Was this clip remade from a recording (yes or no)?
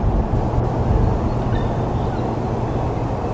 no